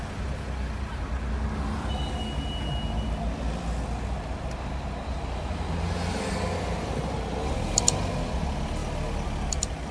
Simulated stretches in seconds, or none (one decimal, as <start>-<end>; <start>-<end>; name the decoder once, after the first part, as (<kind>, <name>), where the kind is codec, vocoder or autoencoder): none